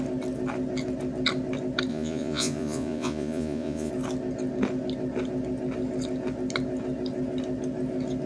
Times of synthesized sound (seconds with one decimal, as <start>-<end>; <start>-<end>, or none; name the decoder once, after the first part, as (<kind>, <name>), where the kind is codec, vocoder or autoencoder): 1.9-3.9 (vocoder, Vocos)